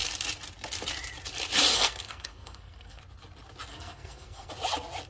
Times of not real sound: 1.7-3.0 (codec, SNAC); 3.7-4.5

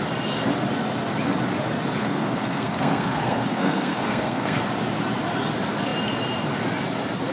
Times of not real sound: 2.0-4.6 (codec, SNAC)

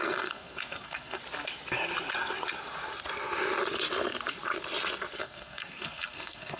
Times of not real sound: 0.0-1.2 (codec, SNAC); 5.2-6.6

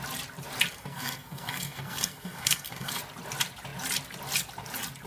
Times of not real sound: 0.7-3.0 (codec, SNAC)

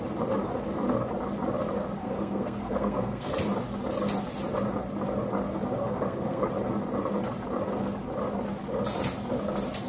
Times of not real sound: 2.0-3.3 (codec, SNAC); 5.8-6.5

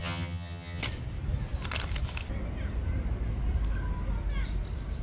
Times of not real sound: 0.0-0.8 (vocoder, HiFi-GAN)

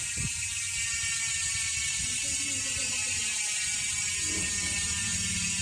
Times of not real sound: none

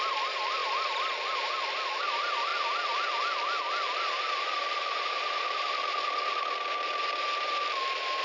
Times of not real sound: 0.0-0.6 (vocoder, BigVGAN v2); 2.0-2.5; 5.1-8.2